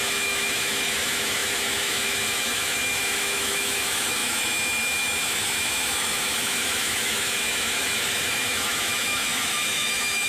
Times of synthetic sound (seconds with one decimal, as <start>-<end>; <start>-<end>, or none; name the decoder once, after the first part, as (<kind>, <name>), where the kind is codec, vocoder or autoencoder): 0.0-10.3 (autoencoder, DAC-VAE)